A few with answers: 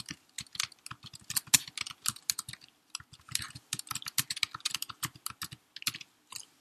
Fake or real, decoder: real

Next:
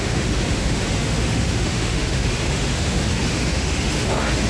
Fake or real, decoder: fake, autoencoder, DAC-VAE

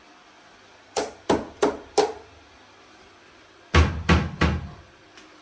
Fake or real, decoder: real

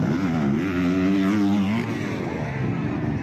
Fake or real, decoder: real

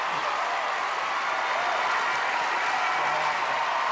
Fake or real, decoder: real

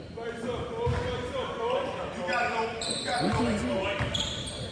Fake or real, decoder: fake, vocoder, BigVGAN v2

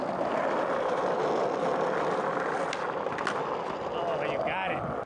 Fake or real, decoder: real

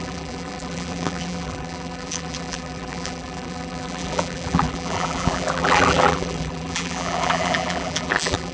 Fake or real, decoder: fake, vocoder, BigVGAN v2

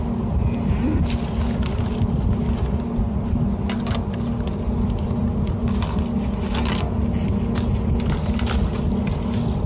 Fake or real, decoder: real